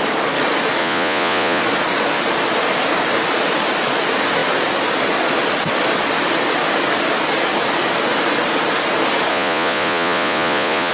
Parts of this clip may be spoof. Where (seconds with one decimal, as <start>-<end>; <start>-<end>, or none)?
0.8-1.6; 9.3-10.9